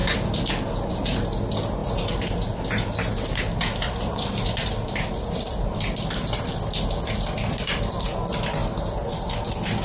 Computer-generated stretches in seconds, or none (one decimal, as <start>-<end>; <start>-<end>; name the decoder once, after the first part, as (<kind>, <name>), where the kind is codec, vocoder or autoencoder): none